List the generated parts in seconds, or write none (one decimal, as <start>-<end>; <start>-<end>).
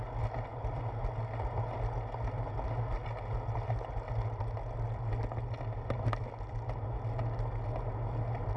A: none